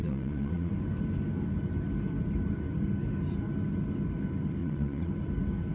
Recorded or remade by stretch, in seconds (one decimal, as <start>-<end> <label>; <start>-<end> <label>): 0.0-0.7 remade; 0.7-4.6 recorded; 4.6-5.1 remade; 5.1-5.7 recorded